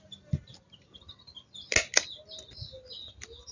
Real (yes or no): yes